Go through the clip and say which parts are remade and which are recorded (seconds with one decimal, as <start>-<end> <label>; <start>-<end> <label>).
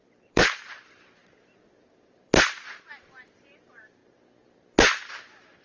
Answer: 0.0-1.2 remade; 1.2-2.9 recorded; 2.9-4.0 remade; 4.0-5.6 recorded